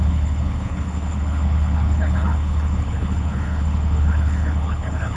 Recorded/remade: remade